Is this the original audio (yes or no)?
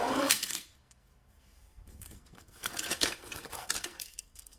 no